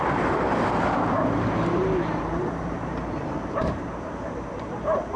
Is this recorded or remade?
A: remade